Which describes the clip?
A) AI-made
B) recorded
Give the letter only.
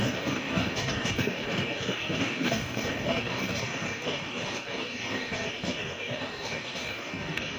A